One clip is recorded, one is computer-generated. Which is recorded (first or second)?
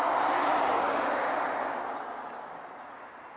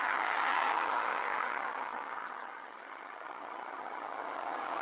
first